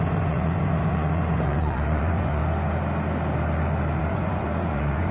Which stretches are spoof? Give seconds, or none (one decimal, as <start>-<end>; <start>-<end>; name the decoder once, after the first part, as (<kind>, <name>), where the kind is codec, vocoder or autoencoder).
0.0-2.4 (vocoder, Vocos); 4.0-5.1